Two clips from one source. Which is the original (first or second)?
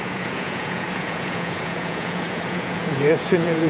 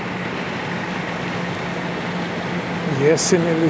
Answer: second